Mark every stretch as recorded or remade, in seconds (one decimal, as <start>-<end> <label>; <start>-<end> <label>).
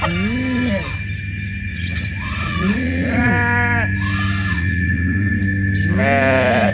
0.0-1.7 recorded; 1.7-3.3 remade; 3.3-4.5 recorded; 4.5-5.3 remade; 5.3-6.7 recorded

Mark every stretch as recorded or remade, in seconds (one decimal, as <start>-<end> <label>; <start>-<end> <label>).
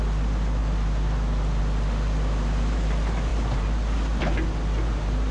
0.0-5.3 recorded